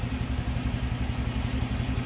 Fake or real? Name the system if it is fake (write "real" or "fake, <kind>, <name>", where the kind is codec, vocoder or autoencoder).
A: real